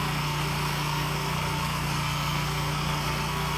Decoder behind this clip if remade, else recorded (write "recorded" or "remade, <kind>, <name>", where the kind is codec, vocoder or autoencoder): remade, codec, SNAC